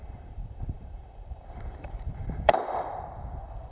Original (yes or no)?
no